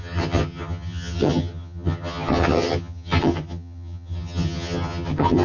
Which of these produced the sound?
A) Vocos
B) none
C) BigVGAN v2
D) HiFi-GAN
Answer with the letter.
D